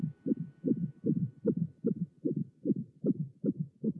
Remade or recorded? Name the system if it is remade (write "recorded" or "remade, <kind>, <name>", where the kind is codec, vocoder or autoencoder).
recorded